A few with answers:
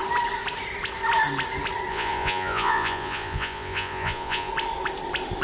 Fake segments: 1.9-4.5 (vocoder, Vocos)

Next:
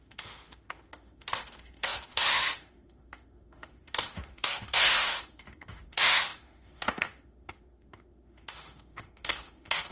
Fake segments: 0.0-9.9 (autoencoder, DAC-VAE)

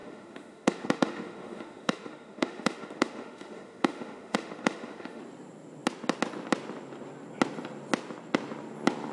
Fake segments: 0.0-5.2 (autoencoder, DAC-VAE)